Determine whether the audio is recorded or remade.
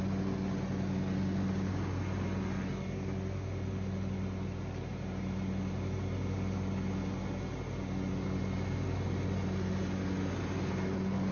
recorded